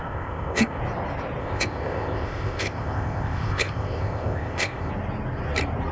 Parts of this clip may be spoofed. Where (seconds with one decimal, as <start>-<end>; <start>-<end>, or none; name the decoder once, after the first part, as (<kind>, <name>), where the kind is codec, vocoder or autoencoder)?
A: 0.0-0.8 (codec, ZipCodec); 1.4-4.9